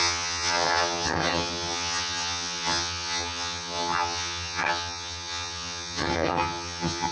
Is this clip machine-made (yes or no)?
yes